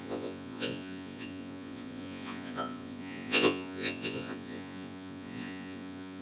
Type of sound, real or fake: fake